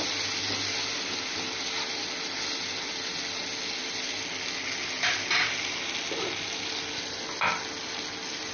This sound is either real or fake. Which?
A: real